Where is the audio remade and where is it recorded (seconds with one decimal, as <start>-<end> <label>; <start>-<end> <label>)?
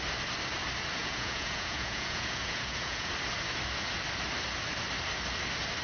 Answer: 0.0-1.0 recorded; 1.0-3.1 remade; 3.1-5.8 recorded